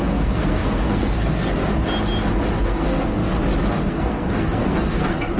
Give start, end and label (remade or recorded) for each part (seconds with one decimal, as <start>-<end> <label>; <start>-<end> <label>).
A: 0.0-1.6 remade; 1.6-2.6 recorded; 2.6-3.2 remade; 3.2-3.7 recorded; 3.7-5.4 remade